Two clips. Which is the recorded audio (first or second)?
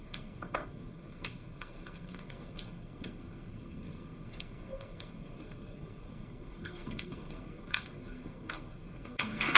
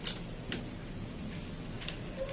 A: second